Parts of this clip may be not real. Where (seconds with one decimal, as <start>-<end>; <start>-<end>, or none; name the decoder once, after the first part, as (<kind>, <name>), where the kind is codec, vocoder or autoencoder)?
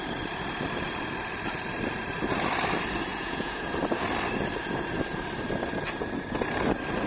3.1-3.7 (vocoder, Vocos)